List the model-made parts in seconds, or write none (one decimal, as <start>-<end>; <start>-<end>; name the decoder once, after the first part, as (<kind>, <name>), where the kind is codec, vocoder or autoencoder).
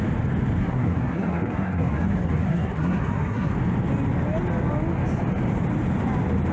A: 0.6-3.5 (codec, SNAC)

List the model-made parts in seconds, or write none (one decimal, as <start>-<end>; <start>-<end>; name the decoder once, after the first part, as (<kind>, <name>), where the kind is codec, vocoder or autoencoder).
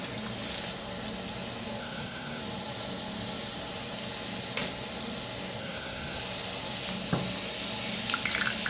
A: 1.8-2.4 (codec, SNAC); 5.6-6.2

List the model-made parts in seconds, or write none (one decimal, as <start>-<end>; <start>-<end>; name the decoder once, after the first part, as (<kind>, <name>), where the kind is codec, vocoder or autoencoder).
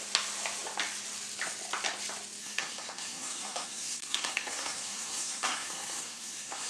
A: 2.4-6.7 (codec, SNAC)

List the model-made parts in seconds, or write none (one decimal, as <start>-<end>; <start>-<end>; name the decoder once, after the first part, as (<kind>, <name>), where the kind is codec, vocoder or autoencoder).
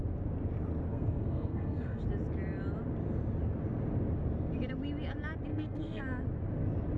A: 0.9-2.0 (codec, SNAC); 5.5-6.0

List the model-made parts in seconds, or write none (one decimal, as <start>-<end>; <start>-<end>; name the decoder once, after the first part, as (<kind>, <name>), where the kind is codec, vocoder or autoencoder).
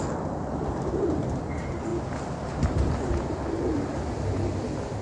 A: none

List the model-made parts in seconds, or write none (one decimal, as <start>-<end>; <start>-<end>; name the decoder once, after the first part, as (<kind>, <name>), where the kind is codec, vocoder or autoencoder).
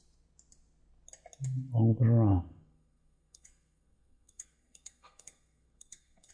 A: 2.3-6.3 (codec, SNAC)